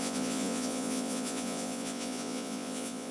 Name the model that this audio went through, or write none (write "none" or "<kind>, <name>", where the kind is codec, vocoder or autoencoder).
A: vocoder, Vocos